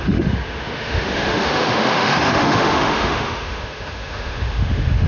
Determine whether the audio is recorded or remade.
remade